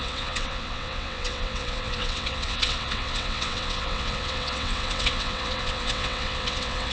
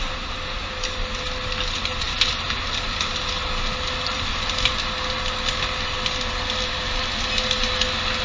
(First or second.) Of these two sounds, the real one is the second